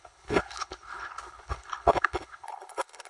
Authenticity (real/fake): fake